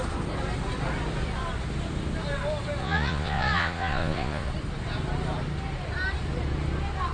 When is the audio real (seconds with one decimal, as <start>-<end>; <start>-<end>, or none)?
0.0-2.8; 4.5-7.1